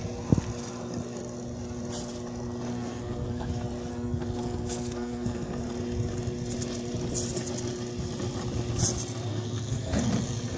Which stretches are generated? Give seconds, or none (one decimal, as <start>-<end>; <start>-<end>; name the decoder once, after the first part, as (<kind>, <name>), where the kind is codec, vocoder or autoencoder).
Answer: 2.7-3.5 (codec, SNAC); 3.9-5.6; 9.3-10.1